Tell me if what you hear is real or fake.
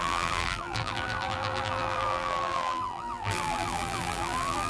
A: fake